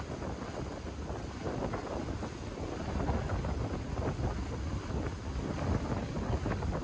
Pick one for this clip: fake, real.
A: real